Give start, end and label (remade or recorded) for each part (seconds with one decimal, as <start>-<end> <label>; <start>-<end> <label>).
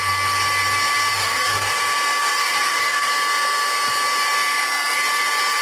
0.0-1.1 recorded; 1.1-1.8 remade; 1.8-2.2 recorded; 2.2-3.1 remade; 3.1-5.6 recorded